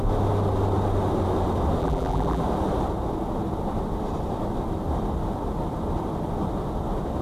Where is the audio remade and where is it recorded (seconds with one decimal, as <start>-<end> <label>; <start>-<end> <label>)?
0.0-1.8 recorded; 1.8-2.4 remade; 2.4-7.2 recorded